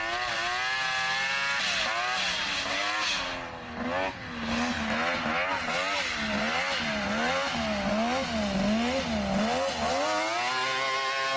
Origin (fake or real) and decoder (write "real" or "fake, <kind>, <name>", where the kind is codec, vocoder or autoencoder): real